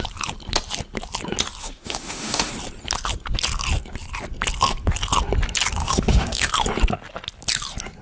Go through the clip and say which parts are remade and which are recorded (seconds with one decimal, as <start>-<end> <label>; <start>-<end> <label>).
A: 0.0-1.6 recorded; 1.6-2.5 remade; 2.5-5.8 recorded; 5.8-6.5 remade; 6.5-8.0 recorded